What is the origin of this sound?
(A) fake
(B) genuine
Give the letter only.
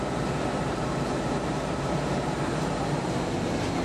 A